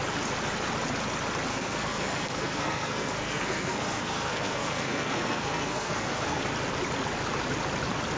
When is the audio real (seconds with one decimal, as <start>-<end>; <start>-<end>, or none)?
0.0-1.5; 6.4-8.2